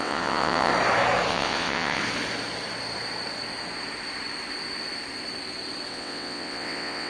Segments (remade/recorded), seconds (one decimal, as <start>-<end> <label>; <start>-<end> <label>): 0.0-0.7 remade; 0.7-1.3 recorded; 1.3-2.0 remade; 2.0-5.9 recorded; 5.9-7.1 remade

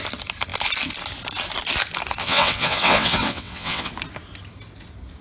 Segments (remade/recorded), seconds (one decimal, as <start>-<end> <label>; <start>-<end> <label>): 0.0-2.2 recorded; 2.2-3.9 remade; 3.9-5.2 recorded

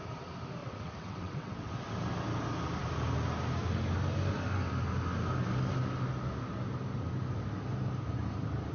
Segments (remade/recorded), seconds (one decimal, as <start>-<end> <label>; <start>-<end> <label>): 0.0-0.6 recorded; 0.6-1.7 remade; 1.7-8.7 recorded